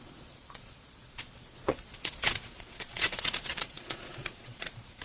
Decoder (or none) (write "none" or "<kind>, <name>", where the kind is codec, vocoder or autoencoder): vocoder, Vocos